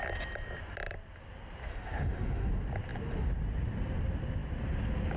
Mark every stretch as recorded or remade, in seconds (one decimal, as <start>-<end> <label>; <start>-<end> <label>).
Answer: 0.0-1.7 recorded; 1.7-2.5 remade; 2.5-5.2 recorded

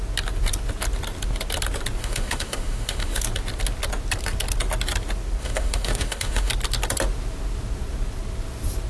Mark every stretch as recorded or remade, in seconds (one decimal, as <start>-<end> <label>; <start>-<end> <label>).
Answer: 0.0-2.0 recorded; 2.0-3.2 remade; 3.2-5.4 recorded; 5.4-6.5 remade; 6.5-8.9 recorded